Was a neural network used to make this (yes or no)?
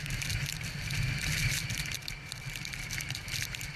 no